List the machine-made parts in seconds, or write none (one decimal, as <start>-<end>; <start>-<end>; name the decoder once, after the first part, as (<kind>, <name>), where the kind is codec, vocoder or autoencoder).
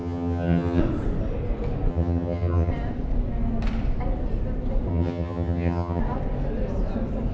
0.0-0.8 (vocoder, HiFi-GAN); 1.9-2.7; 4.9-6.0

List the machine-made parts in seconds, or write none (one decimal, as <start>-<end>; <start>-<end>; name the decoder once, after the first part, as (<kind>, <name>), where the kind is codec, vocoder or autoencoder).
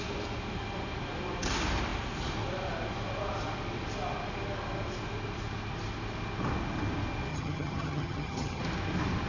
7.3-8.6 (vocoder, HiFi-GAN)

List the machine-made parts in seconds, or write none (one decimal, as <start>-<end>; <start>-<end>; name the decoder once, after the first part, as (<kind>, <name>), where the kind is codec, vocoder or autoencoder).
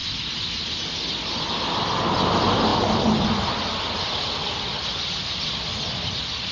none